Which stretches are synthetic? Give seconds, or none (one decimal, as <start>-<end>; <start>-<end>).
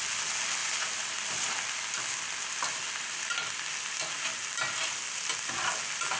none